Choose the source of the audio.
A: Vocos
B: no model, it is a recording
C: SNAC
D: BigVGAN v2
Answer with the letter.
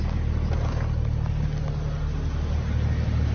B